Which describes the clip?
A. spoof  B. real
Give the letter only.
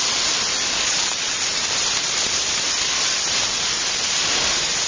B